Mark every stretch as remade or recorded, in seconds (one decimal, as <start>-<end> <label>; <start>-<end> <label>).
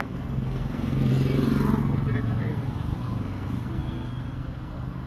0.0-1.1 remade; 1.1-1.8 recorded; 1.8-5.1 remade